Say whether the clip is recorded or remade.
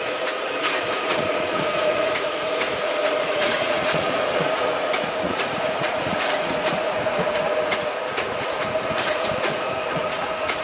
remade